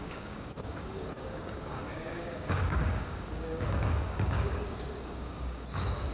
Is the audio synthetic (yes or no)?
yes